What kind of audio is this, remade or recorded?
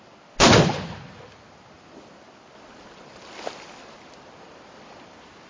remade